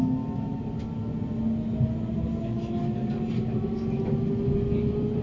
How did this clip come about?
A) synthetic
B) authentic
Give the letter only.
B